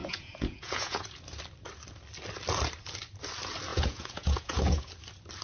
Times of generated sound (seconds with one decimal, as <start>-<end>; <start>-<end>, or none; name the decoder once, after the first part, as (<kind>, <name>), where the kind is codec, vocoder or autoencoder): 0.0-1.2 (vocoder, Vocos); 3.7-4.9